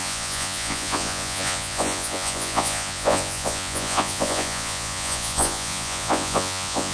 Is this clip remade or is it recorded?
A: remade